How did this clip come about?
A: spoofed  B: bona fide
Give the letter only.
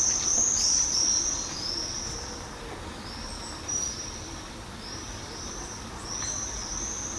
A